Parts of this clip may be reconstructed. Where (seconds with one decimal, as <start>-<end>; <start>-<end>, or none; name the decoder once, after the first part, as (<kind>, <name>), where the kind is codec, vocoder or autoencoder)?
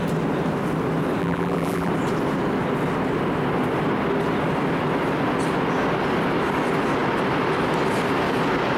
1.2-1.9 (vocoder, BigVGAN v2)